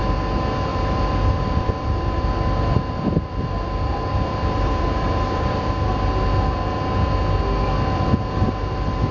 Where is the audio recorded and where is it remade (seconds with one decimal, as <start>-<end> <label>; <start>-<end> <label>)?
0.0-0.7 recorded; 0.7-6.0 remade; 6.0-9.1 recorded